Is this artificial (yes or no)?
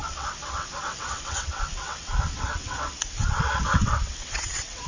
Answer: yes